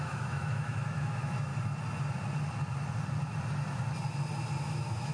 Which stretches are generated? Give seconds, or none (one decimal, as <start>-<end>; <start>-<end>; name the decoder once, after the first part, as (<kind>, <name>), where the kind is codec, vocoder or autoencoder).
0.0-1.5 (autoencoder, DAC-VAE); 4.6-5.1